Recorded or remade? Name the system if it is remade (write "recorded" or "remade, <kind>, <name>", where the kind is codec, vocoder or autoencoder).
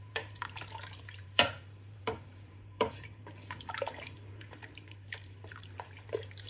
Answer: remade, vocoder, BigVGAN v2